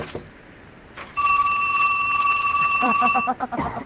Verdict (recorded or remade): remade